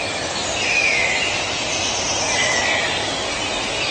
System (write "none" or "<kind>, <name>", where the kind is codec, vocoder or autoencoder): none